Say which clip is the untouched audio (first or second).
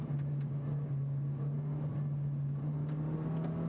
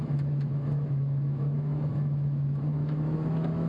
first